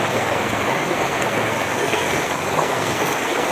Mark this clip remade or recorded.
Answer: remade